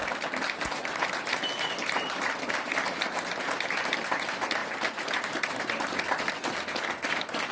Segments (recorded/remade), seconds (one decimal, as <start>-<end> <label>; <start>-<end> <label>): 0.0-7.5 recorded